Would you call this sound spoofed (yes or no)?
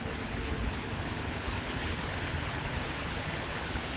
yes